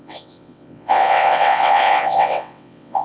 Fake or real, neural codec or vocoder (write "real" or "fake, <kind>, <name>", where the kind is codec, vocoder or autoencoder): fake, vocoder, WaveNeXt